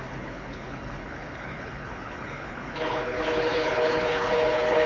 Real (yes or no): no